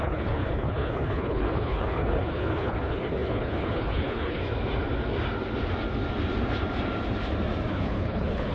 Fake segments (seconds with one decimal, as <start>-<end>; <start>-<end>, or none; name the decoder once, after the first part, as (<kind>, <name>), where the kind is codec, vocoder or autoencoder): 0.0-4.4 (codec, HILCodec); 7.7-8.5